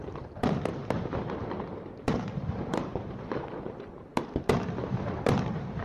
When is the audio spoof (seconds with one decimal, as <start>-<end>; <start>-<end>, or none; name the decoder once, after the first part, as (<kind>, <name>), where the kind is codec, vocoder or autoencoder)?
0.0-4.1 (vocoder, BigVGAN v2); 5.3-5.8